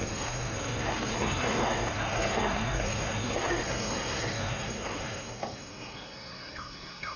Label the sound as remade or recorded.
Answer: remade